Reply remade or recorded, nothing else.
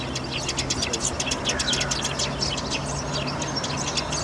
recorded